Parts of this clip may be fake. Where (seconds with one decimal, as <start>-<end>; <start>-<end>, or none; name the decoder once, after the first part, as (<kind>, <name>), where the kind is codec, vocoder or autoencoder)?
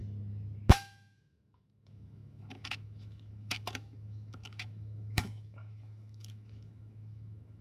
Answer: 0.7-7.6 (autoencoder, DAC-VAE)